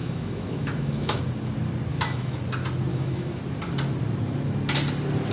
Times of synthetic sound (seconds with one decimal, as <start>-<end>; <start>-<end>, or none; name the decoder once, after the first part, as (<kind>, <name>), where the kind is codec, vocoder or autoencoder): 0.0-1.2 (autoencoder, DAC-VAE); 1.9-2.4; 2.9-3.4